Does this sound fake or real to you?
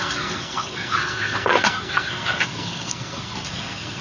fake